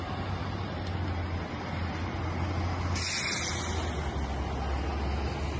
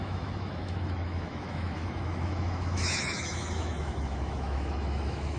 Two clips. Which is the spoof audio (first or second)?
second